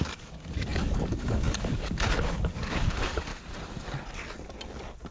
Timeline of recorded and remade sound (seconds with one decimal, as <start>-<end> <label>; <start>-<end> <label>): 0.0-3.3 remade; 3.3-5.1 recorded